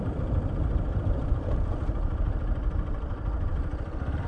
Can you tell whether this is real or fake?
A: fake